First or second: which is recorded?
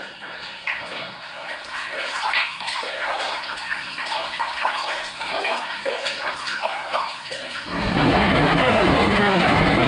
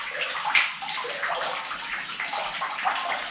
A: second